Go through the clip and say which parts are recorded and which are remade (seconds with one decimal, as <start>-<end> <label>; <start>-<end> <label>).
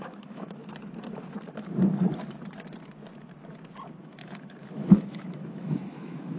0.0-0.7 remade; 0.7-4.0 recorded; 4.0-6.4 remade